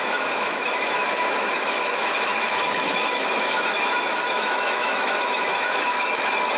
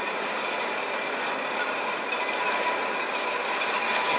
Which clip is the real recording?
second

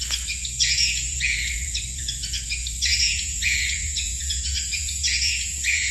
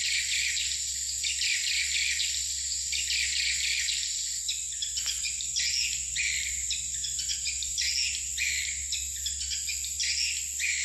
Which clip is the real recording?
second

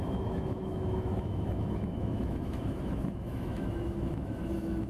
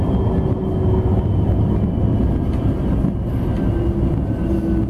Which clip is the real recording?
second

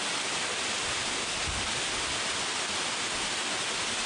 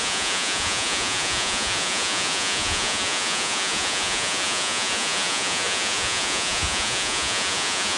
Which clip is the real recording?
first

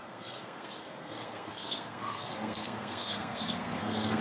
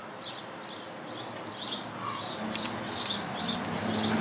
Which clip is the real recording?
second